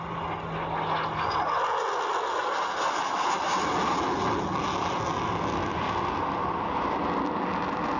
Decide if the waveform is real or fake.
real